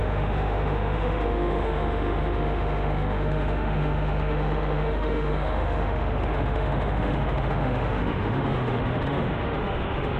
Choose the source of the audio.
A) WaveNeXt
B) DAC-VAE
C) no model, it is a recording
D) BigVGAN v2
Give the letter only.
B